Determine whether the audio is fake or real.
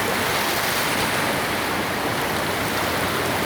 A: real